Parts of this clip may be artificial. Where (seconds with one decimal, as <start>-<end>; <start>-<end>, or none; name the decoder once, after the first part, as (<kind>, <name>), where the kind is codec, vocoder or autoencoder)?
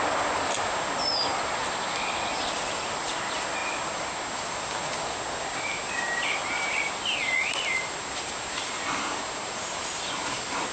none